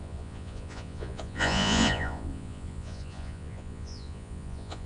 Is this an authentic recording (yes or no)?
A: no